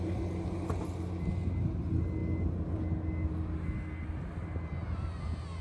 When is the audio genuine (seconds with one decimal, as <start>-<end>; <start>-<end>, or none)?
0.0-5.6